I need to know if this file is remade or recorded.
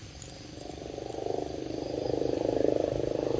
remade